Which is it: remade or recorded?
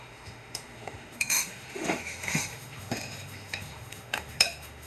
remade